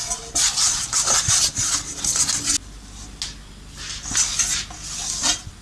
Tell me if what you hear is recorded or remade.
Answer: recorded